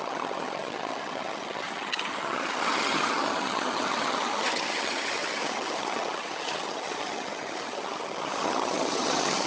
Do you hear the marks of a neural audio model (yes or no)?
yes